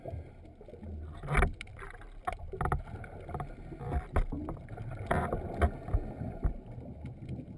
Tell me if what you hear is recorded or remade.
recorded